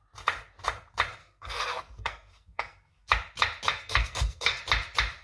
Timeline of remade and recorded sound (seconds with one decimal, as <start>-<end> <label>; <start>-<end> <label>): 0.0-1.2 recorded; 1.2-3.1 remade; 3.1-3.7 recorded; 3.7-4.6 remade; 4.6-5.2 recorded